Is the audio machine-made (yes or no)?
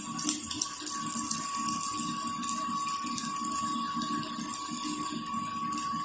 no